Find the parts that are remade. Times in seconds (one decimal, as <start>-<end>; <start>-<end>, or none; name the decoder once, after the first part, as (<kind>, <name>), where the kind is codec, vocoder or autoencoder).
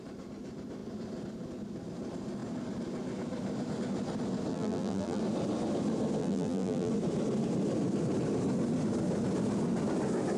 4.5-5.2 (vocoder, BigVGAN v2); 6.2-6.9